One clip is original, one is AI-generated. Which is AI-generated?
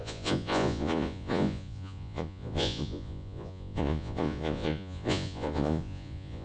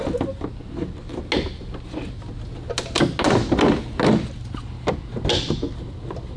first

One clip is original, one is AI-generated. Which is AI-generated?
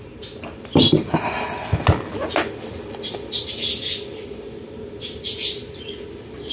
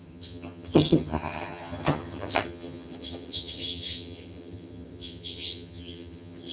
second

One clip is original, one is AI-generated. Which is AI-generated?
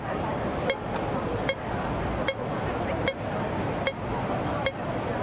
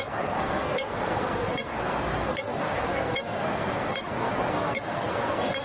second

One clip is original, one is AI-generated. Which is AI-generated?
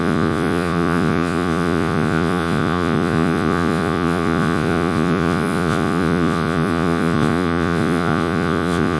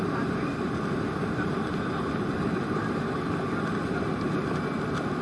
first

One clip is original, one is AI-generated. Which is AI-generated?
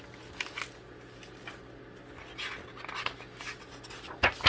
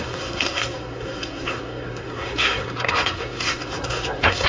second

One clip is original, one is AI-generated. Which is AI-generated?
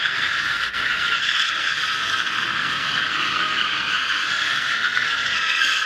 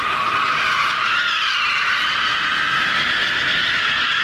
first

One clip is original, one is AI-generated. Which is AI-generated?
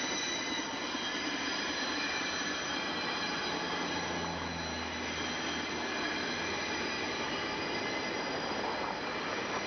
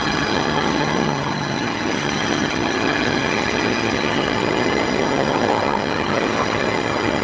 second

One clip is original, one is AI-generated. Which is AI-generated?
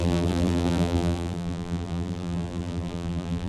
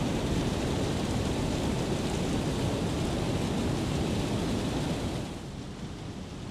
first